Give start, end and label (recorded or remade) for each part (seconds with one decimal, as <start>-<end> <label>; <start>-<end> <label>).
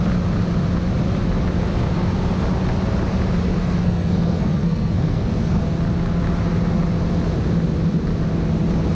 0.0-3.6 recorded; 3.6-5.6 remade; 5.6-8.9 recorded